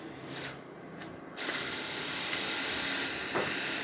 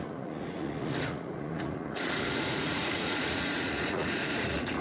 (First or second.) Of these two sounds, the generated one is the second